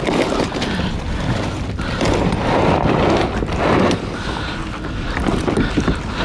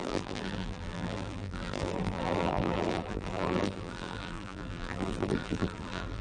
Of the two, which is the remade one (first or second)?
second